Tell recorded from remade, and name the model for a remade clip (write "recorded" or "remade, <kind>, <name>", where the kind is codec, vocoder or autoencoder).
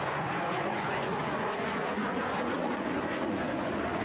remade, vocoder, Vocos